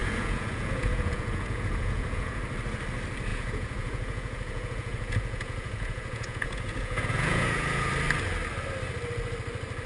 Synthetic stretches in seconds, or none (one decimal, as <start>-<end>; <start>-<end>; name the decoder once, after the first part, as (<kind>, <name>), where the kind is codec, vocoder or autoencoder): 0.0-2.4 (vocoder, Vocos); 3.3-7.9